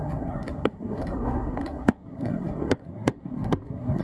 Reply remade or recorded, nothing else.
remade